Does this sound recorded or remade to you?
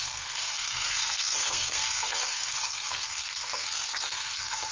remade